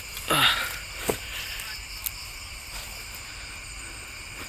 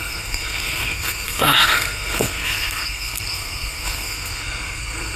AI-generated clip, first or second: second